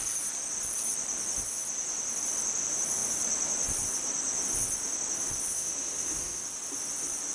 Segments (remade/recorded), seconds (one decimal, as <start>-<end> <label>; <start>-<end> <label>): 0.0-5.5 recorded; 5.5-6.4 remade; 6.4-7.3 recorded